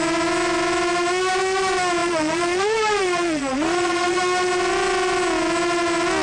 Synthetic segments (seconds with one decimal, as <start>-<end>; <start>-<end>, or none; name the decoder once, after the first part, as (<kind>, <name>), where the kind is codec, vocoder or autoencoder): 2.0-4.2 (vocoder, Vocos)